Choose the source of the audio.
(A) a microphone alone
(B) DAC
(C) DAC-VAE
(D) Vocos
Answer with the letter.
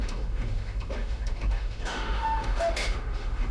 C